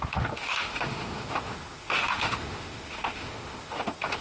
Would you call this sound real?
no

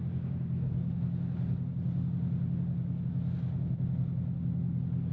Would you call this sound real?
yes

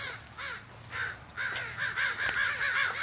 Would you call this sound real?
yes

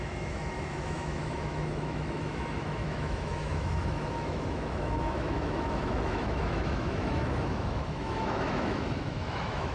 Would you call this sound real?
no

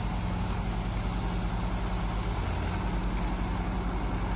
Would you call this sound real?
yes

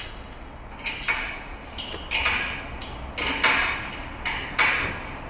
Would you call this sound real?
yes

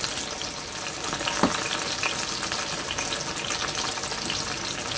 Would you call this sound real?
yes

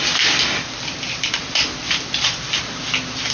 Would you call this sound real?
yes